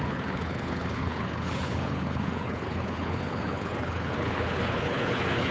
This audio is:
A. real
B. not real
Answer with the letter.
B